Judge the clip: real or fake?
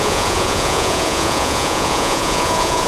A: fake